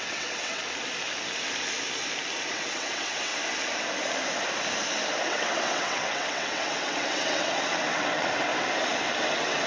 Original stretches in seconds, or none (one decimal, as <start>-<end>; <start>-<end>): 0.6-2.5; 3.3-5.2; 8.5-9.2